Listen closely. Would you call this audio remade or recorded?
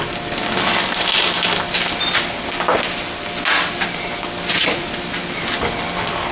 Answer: recorded